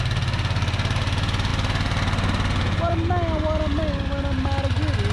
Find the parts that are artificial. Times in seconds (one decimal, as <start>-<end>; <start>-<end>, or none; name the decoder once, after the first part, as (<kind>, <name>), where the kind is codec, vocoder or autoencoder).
none